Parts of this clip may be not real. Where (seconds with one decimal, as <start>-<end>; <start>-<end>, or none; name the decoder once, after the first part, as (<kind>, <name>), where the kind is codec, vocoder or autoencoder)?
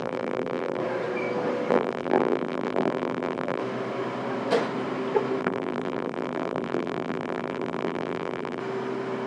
0.0-0.8 (vocoder, BigVGAN v2); 1.7-3.6; 5.4-8.6